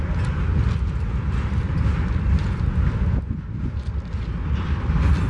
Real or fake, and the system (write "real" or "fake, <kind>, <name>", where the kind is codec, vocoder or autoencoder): real